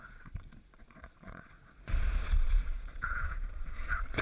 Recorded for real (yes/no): no